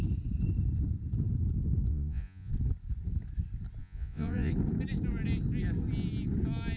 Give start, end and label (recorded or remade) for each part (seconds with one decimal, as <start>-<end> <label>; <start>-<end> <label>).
0.0-1.9 recorded; 1.9-2.5 remade; 2.5-3.8 recorded; 3.8-4.5 remade; 4.5-6.8 recorded